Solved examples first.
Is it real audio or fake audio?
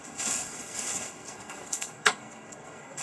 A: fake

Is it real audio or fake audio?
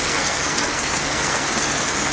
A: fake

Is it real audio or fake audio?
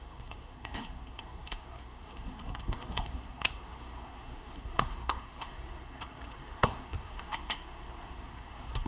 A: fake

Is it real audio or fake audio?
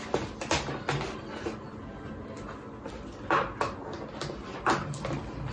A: real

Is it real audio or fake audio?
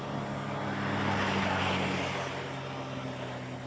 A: real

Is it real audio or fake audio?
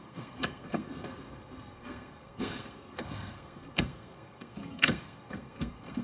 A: fake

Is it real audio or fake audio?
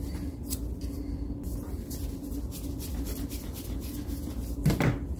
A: real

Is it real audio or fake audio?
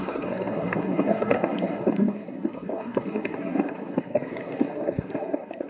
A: fake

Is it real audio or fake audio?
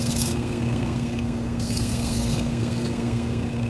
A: fake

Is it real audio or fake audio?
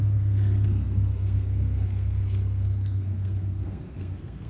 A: fake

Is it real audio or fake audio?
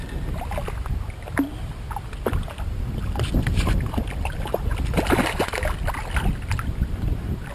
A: real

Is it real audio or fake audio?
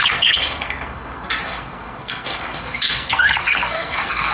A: fake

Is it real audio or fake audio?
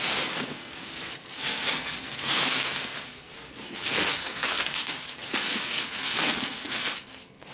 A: fake